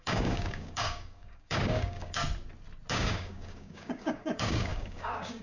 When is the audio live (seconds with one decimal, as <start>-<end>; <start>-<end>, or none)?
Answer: 2.2-2.9